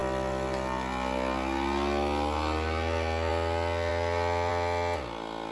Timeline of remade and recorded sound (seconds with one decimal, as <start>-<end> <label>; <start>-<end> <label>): 0.0-5.5 recorded